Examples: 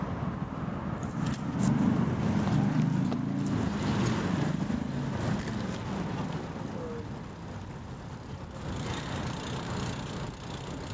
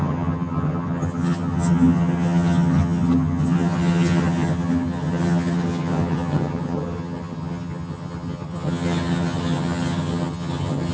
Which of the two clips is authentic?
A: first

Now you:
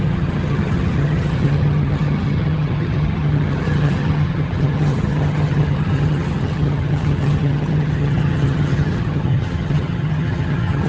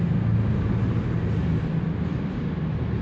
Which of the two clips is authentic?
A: second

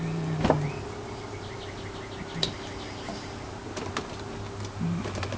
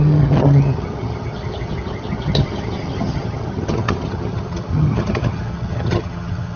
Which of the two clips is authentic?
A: first